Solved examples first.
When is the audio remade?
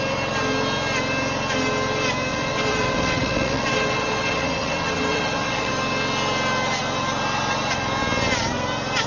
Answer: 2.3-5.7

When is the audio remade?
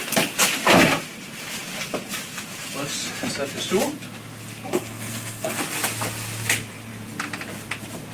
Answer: 4.7-5.6